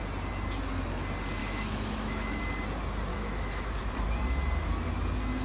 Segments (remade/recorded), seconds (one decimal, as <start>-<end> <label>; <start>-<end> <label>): 0.0-1.4 recorded; 1.4-2.4 remade; 2.4-3.1 recorded; 3.1-3.7 remade; 3.7-5.4 recorded